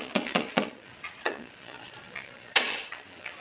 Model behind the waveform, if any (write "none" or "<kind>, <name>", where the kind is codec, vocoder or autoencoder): vocoder, Vocos